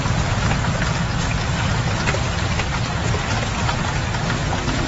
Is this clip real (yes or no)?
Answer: yes